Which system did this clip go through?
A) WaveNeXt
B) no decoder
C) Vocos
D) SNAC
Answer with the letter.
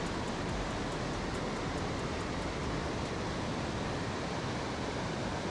B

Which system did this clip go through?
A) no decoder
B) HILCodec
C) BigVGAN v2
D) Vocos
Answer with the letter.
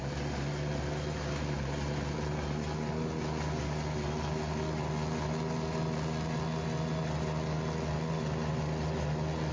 A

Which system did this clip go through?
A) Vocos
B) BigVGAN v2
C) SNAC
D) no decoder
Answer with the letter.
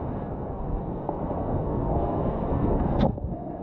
C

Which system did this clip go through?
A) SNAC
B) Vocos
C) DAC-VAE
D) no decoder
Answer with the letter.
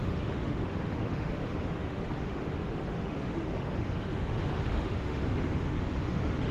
C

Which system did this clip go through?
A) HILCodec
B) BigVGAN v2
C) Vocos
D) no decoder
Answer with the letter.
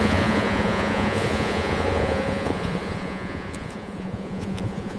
C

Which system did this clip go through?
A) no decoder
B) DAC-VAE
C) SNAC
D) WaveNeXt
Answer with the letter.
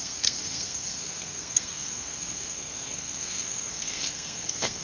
C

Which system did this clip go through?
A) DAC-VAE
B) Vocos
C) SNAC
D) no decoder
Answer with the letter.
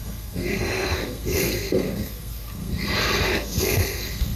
C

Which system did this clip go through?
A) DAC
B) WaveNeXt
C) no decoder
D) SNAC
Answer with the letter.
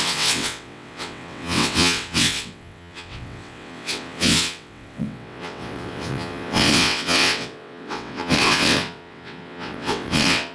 B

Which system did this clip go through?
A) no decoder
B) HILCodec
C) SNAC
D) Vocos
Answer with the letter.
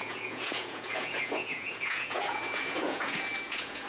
D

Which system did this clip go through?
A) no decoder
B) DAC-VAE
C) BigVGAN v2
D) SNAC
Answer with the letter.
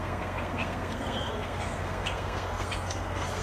D